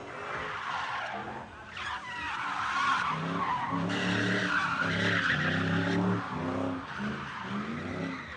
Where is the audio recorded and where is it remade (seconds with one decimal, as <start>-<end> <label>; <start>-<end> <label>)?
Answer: 0.0-8.4 recorded